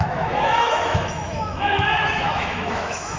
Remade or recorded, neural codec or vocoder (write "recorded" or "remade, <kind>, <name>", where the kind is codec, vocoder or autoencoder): remade, autoencoder, DAC-VAE